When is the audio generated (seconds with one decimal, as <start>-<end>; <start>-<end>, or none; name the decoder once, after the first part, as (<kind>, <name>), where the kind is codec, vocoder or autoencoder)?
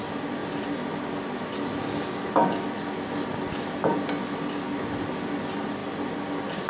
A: none